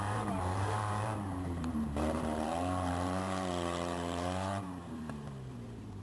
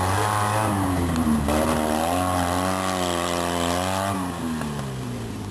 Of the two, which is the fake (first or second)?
first